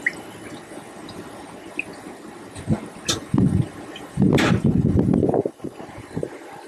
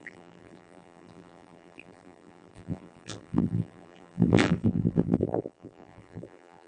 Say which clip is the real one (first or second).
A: first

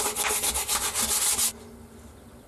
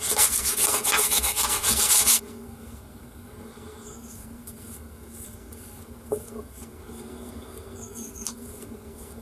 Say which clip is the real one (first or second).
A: first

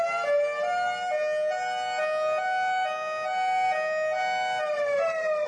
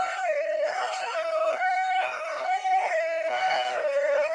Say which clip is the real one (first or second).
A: first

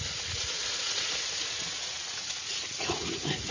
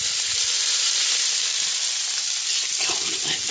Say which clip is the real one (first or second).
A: second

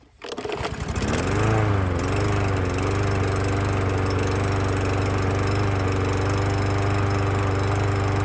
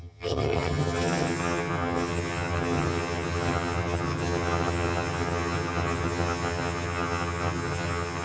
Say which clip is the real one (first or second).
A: first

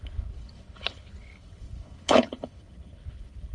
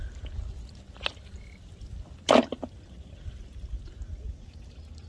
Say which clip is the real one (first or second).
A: second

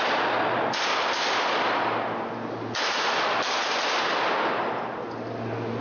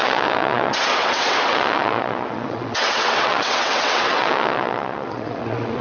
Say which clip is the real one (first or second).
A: first